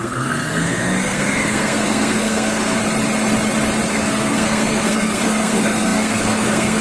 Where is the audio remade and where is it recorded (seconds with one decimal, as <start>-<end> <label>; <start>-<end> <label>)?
0.0-2.8 remade; 2.8-3.9 recorded; 3.9-6.8 remade